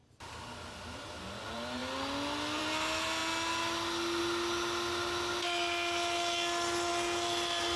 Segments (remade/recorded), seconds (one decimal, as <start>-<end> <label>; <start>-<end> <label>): 0.0-7.8 recorded